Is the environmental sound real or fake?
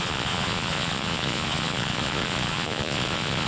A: fake